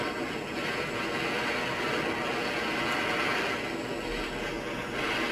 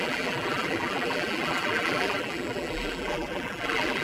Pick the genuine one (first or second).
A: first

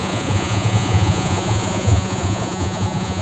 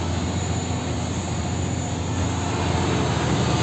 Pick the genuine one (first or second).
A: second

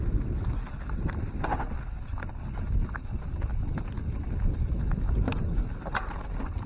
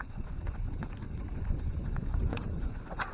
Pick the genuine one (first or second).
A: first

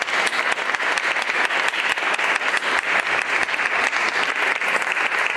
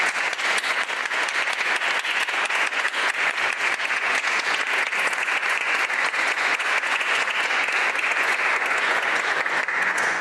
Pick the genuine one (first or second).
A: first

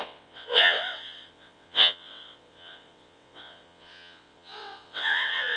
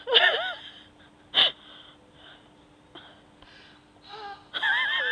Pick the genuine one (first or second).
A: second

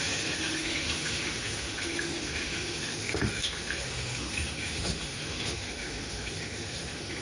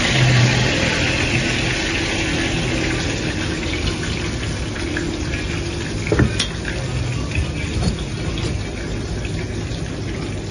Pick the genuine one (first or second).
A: second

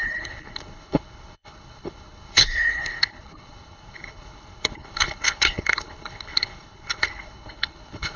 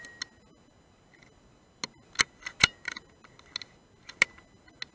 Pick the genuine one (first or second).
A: second